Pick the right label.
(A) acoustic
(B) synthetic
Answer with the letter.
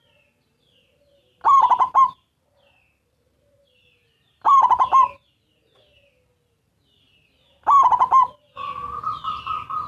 A